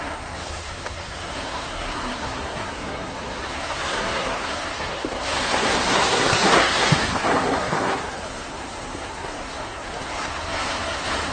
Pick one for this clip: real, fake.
fake